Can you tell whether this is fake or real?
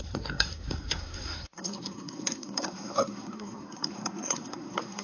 fake